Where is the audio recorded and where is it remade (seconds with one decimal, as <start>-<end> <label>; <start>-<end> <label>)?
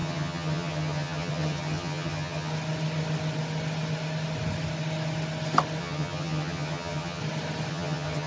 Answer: 0.0-2.5 remade; 2.5-5.8 recorded; 5.8-7.2 remade; 7.2-7.7 recorded; 7.7-8.3 remade